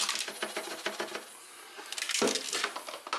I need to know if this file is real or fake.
real